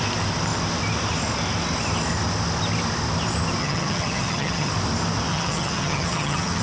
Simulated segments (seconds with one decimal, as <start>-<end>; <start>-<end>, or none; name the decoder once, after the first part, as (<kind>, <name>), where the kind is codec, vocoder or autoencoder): 3.6-4.7 (vocoder, HiFi-GAN); 5.3-6.6

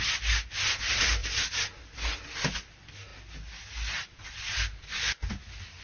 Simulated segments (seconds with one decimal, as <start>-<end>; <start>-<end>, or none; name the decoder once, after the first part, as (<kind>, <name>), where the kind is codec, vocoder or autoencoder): none

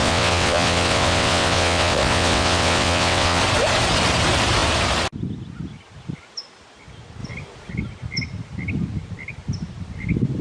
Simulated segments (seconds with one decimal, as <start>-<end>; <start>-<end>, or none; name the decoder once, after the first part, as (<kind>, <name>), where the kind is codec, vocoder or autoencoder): 0.0-3.4 (vocoder, WaveNeXt)